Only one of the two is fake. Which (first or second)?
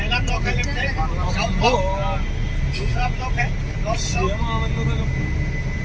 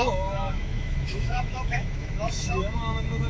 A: second